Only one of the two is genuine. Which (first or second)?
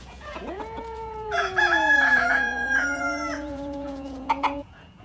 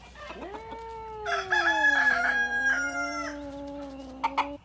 second